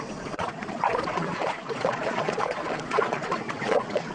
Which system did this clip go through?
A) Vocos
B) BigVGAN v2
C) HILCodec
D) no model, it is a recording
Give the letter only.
A